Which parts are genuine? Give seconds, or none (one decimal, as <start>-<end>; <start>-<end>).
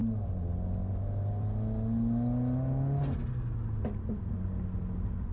0.0-5.3